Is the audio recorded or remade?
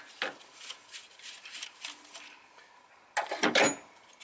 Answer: recorded